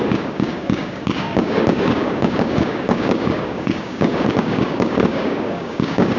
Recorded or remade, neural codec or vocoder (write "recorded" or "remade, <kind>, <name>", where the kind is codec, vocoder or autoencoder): remade, codec, DAC